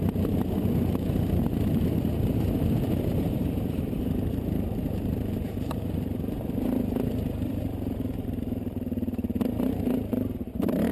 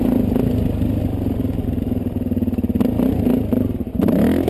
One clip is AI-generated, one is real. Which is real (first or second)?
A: second